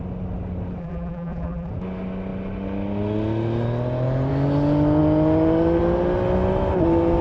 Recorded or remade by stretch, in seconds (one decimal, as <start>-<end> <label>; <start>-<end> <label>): 0.0-0.8 recorded; 0.8-1.7 remade; 1.7-7.2 recorded

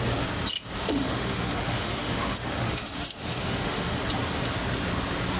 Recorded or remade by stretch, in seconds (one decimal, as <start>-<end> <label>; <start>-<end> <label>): 0.0-0.8 recorded; 0.8-4.0 remade; 4.0-5.4 recorded

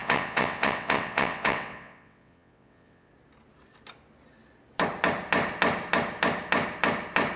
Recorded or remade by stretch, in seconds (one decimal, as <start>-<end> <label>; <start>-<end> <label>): 0.0-3.1 remade; 3.1-7.4 recorded

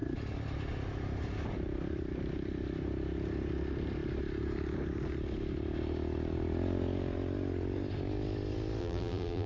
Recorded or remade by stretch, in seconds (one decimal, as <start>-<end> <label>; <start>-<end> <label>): 0.0-8.8 recorded; 8.8-9.5 remade

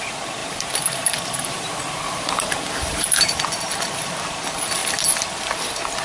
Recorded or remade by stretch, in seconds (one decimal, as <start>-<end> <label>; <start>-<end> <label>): 0.0-0.4 recorded; 0.4-3.7 remade; 3.7-6.0 recorded

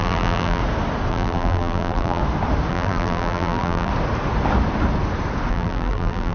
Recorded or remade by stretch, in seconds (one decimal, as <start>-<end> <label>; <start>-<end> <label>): 0.0-0.6 remade; 0.6-1.1 recorded; 1.1-2.2 remade; 2.2-2.7 recorded; 2.7-3.9 remade; 3.9-5.5 recorded; 5.5-6.3 remade